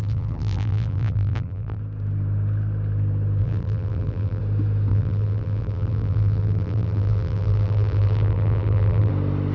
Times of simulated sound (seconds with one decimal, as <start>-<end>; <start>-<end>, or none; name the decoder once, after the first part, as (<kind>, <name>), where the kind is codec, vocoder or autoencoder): 0.0-1.8 (vocoder, BigVGAN v2); 3.4-4.4; 4.9-9.1